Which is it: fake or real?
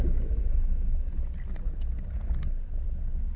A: real